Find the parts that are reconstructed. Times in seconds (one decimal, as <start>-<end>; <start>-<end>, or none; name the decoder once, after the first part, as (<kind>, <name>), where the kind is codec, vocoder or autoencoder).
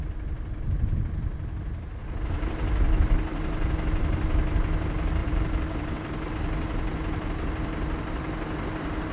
2.0-2.5 (vocoder, BigVGAN v2); 5.2-6.3